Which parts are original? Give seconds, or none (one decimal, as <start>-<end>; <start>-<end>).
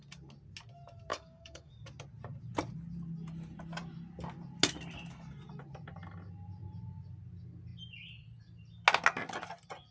0.0-1.1; 1.7-9.9